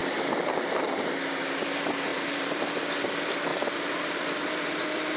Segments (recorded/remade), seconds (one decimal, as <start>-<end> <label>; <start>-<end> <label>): 0.0-1.1 remade; 1.1-2.1 recorded; 2.1-2.9 remade; 2.9-3.5 recorded; 3.5-4.8 remade; 4.8-5.2 recorded